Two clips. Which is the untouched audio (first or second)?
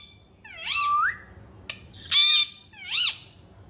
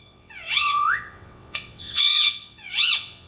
first